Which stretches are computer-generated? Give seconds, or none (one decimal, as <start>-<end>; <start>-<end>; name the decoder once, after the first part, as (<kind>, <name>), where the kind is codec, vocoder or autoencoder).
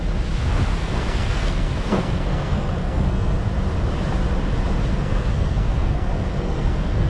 0.8-3.4 (codec, SNAC); 4.9-7.1